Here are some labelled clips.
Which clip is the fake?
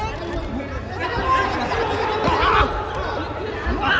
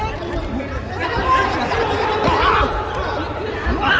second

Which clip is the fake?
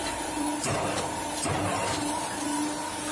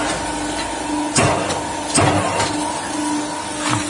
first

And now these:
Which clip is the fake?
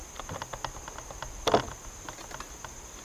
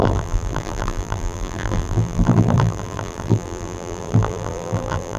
second